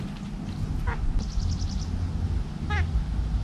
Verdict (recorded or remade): recorded